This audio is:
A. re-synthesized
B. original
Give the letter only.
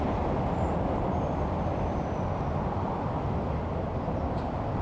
B